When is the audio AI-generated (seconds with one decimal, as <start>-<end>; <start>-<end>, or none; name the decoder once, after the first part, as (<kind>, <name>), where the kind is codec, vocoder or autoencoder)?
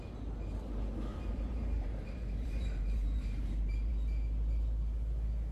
1.1-3.9 (vocoder, BigVGAN v2)